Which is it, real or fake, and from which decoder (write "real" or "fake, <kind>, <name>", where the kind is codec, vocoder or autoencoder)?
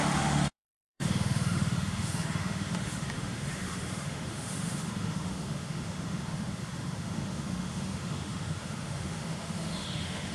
fake, autoencoder, DAC-VAE